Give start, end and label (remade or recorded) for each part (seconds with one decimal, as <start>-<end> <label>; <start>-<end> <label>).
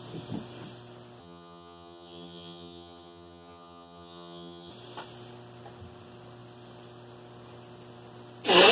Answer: 0.0-1.2 recorded; 1.2-4.7 remade; 4.7-8.7 recorded